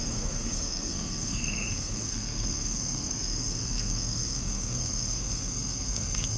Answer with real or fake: fake